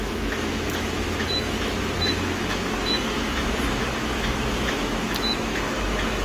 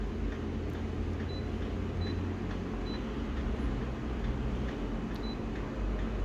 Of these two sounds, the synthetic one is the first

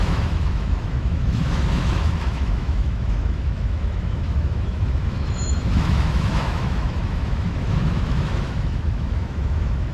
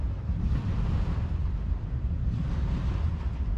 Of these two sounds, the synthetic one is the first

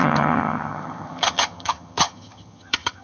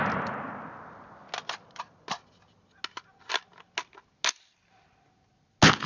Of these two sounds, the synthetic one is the first